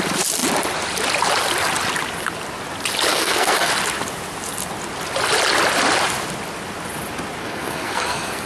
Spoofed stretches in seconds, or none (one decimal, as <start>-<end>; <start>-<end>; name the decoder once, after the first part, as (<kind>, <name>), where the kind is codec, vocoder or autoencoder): 3.1-3.7 (codec, SNAC); 7.4-8.5